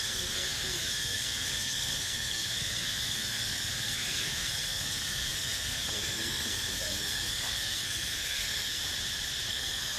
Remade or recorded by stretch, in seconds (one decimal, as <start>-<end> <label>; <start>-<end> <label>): 0.0-8.8 remade; 8.8-9.5 recorded; 9.5-10.0 remade